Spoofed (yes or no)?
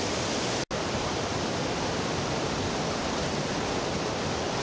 no